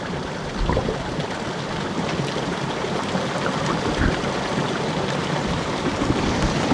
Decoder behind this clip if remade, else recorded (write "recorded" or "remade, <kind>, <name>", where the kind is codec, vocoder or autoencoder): recorded